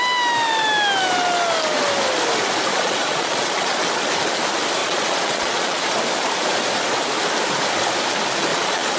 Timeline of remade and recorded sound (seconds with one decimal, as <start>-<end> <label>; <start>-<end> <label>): 0.0-2.7 recorded; 2.7-3.8 remade; 3.8-4.8 recorded; 4.8-5.9 remade; 5.9-8.5 recorded; 8.5-9.0 remade